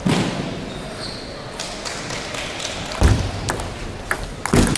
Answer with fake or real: real